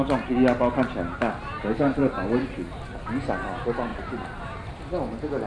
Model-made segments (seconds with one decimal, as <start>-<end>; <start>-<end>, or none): 3.9-4.9